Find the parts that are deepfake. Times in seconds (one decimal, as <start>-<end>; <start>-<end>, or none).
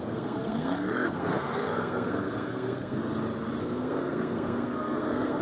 0.0-3.0; 3.6-5.4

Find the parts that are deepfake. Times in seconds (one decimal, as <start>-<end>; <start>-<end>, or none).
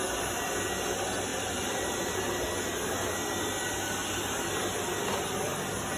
1.3-1.9